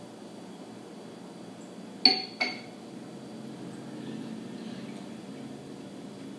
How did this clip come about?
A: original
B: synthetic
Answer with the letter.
A